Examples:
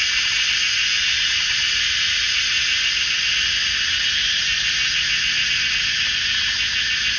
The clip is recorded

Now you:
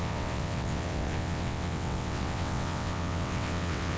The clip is remade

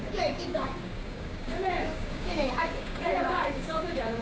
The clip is remade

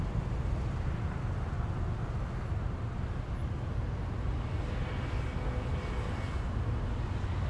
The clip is recorded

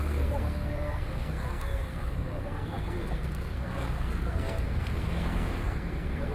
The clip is remade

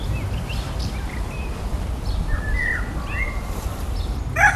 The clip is recorded